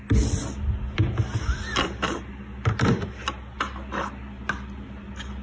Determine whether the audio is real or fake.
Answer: real